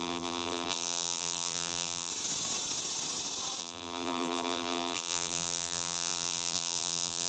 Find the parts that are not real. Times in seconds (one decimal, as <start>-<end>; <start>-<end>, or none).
0.0-2.1; 3.6-7.3